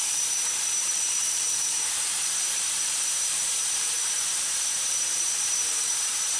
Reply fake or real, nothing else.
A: fake